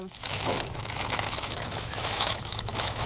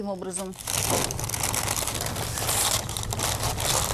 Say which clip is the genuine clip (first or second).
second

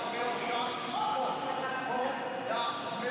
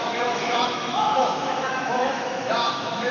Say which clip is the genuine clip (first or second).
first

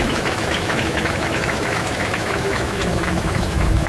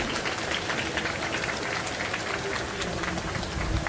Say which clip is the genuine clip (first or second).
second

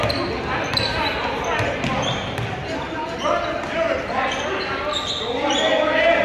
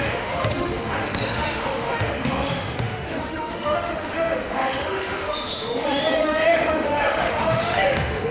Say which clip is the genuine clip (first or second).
first